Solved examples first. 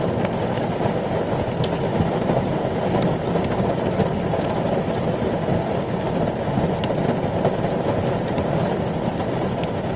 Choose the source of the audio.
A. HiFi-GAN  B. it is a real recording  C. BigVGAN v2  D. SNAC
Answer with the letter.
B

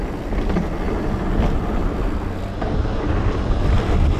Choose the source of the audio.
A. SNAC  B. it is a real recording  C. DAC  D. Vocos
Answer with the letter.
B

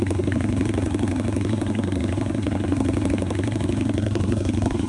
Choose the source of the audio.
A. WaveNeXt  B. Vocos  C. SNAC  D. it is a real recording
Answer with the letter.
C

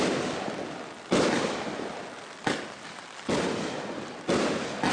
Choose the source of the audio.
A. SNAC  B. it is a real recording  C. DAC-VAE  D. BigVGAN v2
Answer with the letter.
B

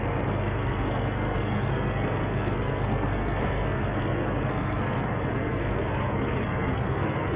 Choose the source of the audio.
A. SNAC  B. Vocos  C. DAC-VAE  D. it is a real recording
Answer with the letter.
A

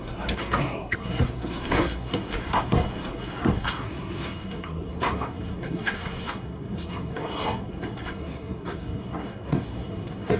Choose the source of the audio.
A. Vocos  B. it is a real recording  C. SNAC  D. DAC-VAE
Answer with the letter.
C